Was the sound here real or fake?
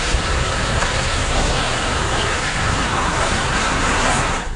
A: fake